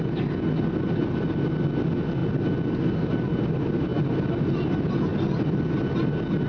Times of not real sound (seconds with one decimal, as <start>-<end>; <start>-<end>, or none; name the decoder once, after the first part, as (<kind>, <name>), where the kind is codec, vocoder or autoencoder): 5.1-6.0 (vocoder, BigVGAN v2)